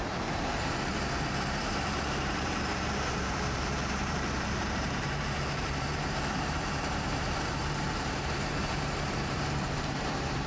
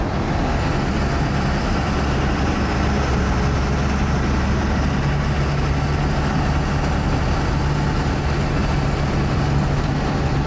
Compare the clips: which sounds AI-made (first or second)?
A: first